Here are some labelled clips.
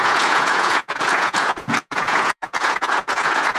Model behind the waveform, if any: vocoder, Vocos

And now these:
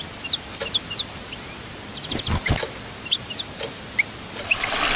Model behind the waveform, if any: none